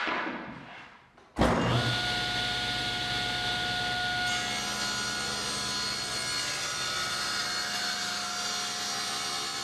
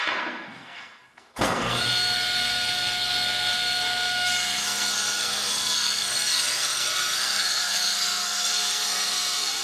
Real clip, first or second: first